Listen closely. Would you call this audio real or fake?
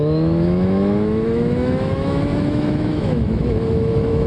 fake